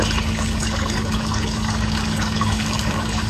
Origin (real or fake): fake